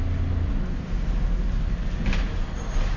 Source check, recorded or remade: recorded